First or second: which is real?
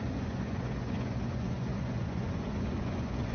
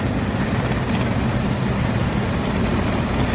second